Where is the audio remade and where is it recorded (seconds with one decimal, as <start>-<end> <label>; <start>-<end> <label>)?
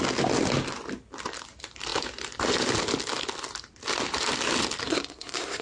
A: 0.0-4.8 recorded; 4.8-5.6 remade